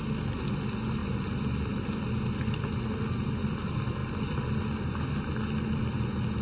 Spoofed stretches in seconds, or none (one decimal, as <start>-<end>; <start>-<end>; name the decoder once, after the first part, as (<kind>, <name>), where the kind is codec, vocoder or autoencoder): none